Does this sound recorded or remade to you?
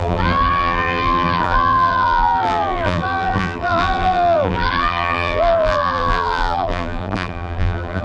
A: remade